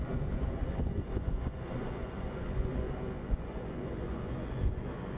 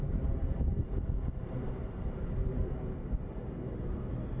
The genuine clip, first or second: second